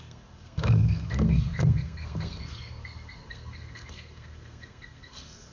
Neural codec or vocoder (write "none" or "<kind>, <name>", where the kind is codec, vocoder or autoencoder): codec, SNAC